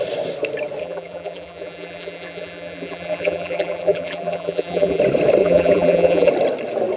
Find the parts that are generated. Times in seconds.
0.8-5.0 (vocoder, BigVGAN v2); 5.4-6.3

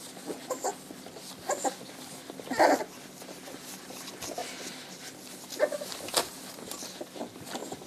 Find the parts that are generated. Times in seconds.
none

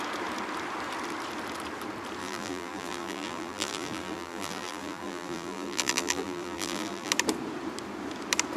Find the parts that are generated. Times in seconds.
2.2-7.1 (vocoder, BigVGAN v2)

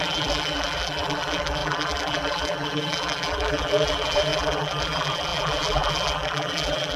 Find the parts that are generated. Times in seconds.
0.0-7.0 (vocoder, BigVGAN v2)

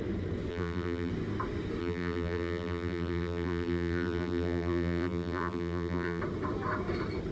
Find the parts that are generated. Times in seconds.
0.5-1.1 (vocoder, BigVGAN v2); 1.8-6.2

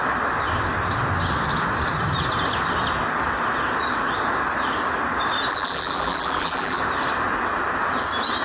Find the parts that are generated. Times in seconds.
5.5-6.8 (vocoder, BigVGAN v2)

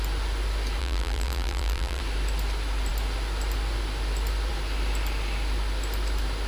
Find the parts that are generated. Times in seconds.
0.8-2.0 (vocoder, BigVGAN v2)